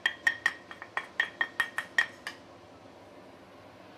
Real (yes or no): yes